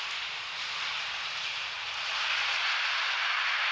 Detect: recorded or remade recorded